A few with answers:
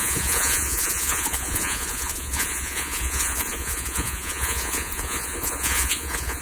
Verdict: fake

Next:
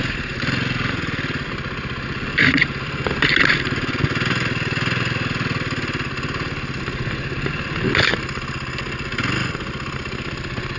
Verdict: real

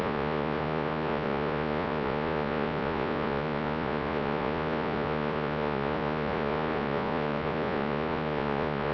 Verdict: fake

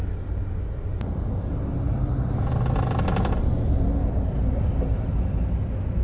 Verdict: real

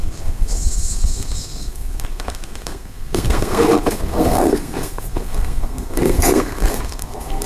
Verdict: fake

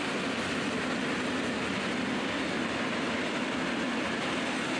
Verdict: real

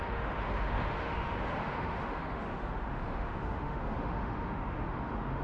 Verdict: fake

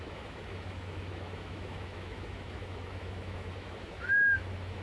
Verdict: fake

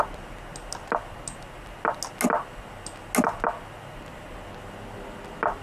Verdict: real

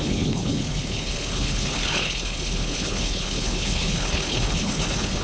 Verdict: fake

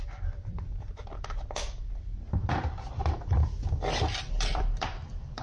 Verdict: fake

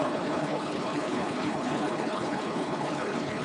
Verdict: fake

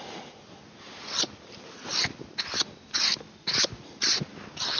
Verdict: real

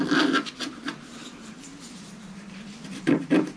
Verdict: real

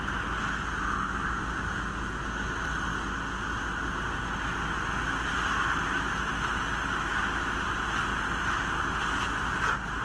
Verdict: real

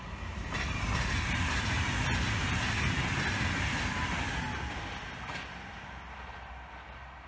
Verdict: real